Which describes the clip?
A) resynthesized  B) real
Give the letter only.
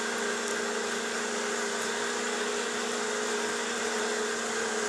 B